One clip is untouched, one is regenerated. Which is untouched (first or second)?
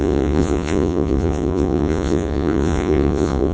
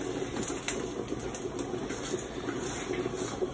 second